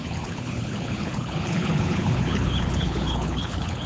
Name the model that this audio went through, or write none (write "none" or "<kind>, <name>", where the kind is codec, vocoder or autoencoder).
codec, HILCodec